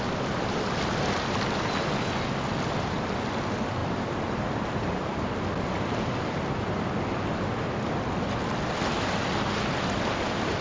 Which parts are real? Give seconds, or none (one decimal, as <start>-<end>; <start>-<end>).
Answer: 0.0-3.8; 5.3-10.6